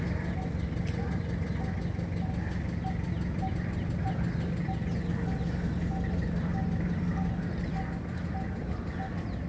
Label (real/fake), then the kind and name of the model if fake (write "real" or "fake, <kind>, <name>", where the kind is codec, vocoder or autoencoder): real